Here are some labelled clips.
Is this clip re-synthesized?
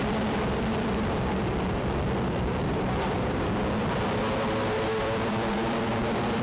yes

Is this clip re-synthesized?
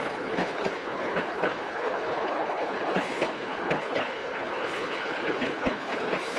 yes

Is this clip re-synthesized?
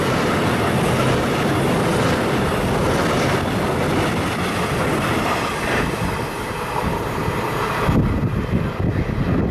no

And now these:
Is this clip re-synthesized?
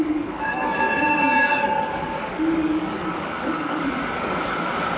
yes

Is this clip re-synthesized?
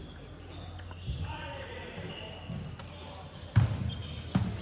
no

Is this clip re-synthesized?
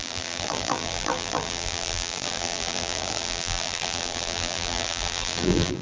yes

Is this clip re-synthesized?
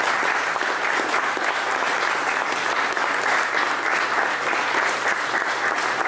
no